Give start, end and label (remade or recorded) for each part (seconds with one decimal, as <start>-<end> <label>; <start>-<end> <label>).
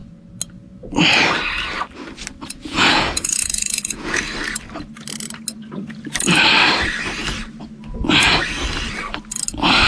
0.0-2.6 recorded; 2.6-4.2 remade; 4.2-9.9 recorded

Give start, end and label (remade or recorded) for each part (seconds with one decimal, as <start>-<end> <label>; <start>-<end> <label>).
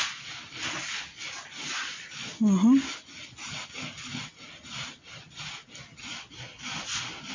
0.0-7.3 recorded